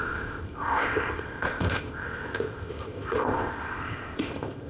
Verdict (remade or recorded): remade